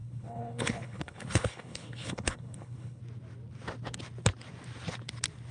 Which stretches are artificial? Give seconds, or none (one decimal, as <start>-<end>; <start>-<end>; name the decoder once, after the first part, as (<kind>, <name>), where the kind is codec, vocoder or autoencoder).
0.0-3.0 (codec, HILCodec)